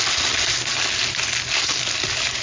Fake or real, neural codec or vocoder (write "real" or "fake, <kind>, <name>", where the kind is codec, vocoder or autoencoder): real